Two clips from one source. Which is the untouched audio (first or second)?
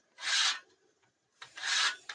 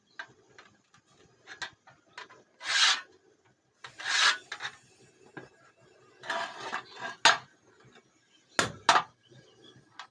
second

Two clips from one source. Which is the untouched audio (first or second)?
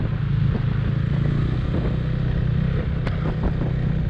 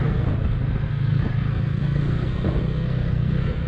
first